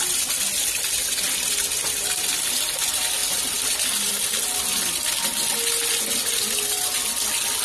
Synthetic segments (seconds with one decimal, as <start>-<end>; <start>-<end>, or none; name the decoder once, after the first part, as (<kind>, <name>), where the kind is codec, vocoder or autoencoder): none